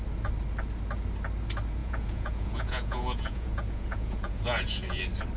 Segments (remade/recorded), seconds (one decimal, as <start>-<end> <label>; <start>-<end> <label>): 0.0-1.8 recorded; 1.8-5.0 remade; 5.0-5.4 recorded